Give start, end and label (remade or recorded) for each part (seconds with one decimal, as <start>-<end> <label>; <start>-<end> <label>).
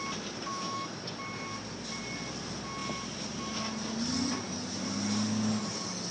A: 0.0-0.5 recorded; 0.5-1.0 remade; 1.0-6.1 recorded